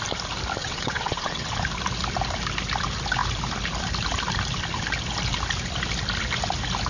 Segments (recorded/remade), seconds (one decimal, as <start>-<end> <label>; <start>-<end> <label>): 0.0-0.6 recorded; 0.6-1.5 remade; 1.5-6.9 recorded